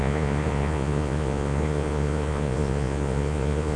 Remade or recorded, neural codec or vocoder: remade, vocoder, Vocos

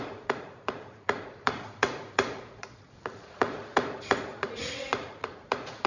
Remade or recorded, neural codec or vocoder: remade, vocoder, Vocos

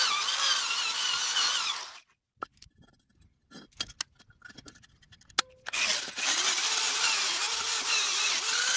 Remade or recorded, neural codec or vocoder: recorded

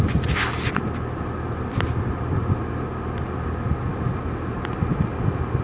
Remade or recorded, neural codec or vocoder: recorded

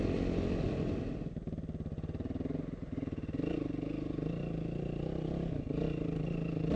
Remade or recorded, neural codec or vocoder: recorded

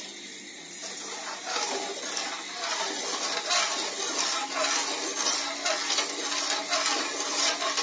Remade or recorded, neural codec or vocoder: recorded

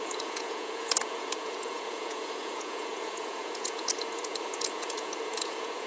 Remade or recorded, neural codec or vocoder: remade, vocoder, Vocos